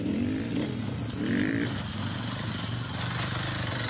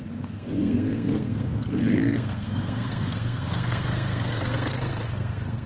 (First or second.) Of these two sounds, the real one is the first